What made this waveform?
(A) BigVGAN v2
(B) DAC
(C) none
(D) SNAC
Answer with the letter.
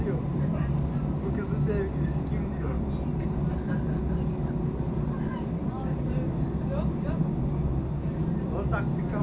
C